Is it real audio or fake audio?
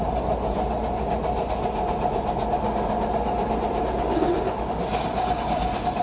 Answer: real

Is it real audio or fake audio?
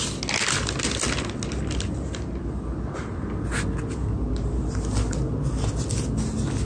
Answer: real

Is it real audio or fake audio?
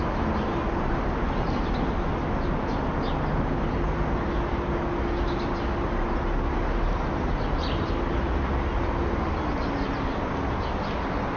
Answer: real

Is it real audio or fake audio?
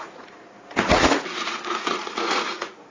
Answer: fake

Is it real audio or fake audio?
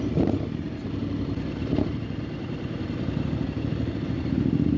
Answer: real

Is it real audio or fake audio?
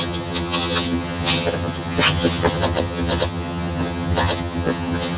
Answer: fake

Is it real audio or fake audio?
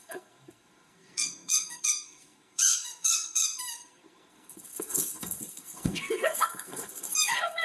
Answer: fake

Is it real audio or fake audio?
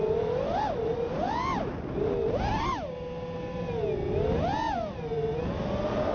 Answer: real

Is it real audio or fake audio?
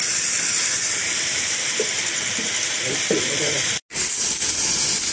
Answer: real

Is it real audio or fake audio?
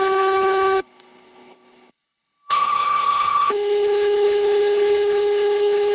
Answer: fake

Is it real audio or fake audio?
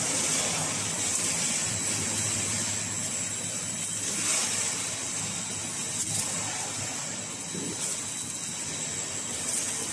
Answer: real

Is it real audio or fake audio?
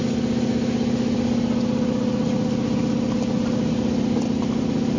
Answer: real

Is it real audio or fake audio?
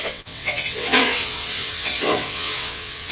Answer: fake